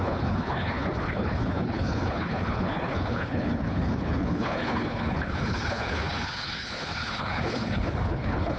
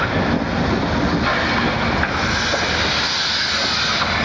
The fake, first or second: first